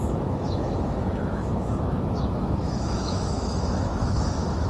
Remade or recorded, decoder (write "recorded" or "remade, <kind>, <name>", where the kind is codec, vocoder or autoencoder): remade, autoencoder, DAC-VAE